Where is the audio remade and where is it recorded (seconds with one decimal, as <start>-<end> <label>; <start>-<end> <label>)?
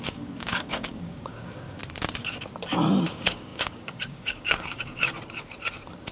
0.0-1.8 remade; 1.8-3.1 recorded; 3.1-5.1 remade; 5.1-6.1 recorded